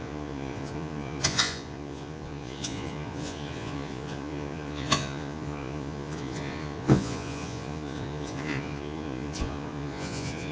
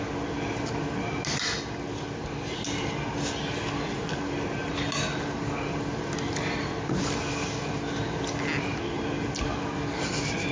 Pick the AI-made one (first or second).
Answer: first